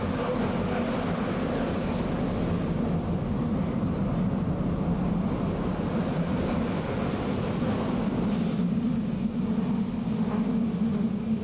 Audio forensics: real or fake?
real